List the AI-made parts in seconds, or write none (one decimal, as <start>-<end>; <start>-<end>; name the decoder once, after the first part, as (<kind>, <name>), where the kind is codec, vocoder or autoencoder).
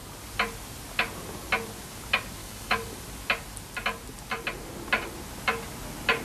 2.4-3.0 (codec, DAC)